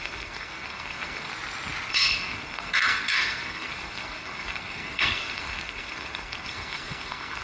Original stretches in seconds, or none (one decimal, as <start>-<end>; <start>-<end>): 1.3-1.9